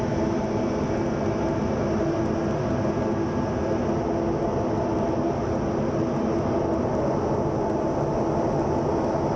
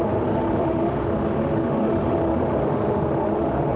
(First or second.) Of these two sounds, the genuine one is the first